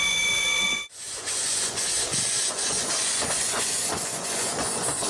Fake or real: fake